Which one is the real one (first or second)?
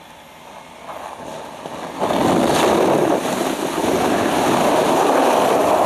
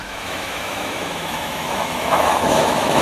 first